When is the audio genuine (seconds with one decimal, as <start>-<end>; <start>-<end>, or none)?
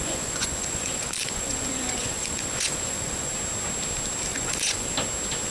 3.3-4.3; 4.9-5.5